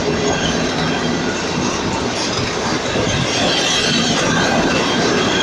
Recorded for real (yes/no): yes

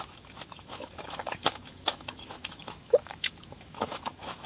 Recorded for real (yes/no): no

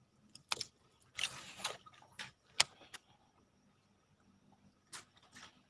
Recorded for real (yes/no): yes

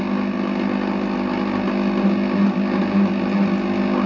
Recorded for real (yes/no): yes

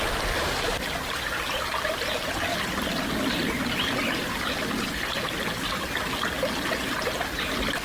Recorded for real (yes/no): yes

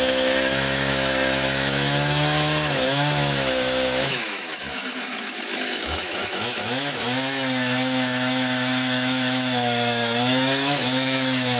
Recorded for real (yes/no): no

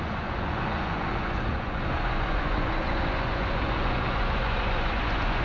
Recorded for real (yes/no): no